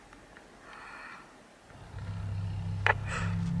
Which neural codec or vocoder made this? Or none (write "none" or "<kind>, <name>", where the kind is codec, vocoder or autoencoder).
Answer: none